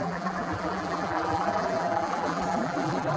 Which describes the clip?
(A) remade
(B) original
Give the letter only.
A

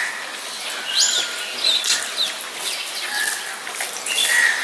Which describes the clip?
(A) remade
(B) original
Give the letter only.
B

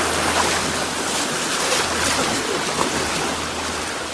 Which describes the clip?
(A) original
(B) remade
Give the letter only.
A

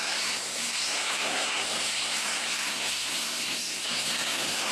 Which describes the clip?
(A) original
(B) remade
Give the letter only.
B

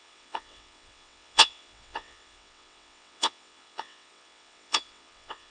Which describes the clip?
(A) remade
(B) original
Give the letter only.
A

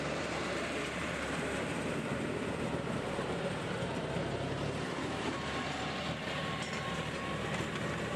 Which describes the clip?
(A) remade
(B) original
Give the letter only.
A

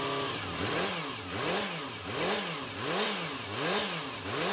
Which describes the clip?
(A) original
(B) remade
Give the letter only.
A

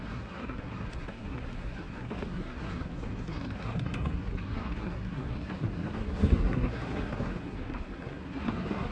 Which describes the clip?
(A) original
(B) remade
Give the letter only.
B